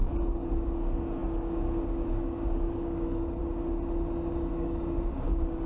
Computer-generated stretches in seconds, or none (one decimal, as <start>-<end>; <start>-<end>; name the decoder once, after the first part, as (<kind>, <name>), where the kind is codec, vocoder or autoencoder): 0.0-3.4 (codec, DAC); 4.5-5.7